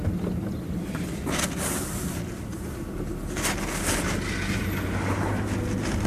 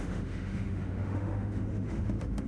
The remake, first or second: second